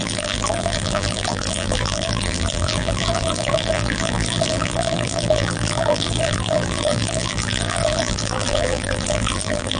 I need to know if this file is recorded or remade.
remade